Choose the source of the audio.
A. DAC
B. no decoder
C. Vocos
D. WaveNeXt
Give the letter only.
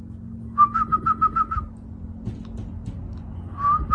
B